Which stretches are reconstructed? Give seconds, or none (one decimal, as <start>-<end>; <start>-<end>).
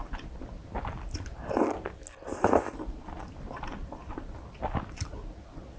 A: none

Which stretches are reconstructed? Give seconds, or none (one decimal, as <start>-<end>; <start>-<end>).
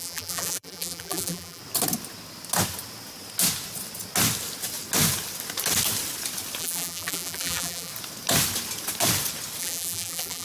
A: 0.0-1.6; 6.6-7.9; 9.6-10.4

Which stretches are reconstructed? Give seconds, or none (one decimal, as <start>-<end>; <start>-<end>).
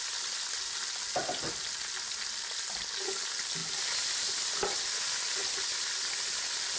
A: none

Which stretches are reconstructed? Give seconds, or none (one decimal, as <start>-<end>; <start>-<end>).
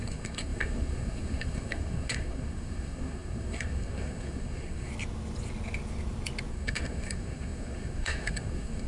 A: 0.0-4.9; 6.5-8.9